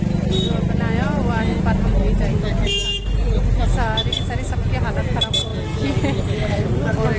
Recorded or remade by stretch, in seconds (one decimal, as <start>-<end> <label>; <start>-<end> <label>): 0.0-7.2 recorded